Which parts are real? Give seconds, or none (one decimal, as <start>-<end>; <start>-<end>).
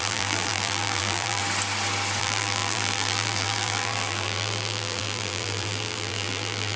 1.4-2.2